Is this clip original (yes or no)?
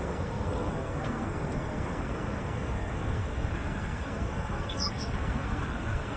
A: no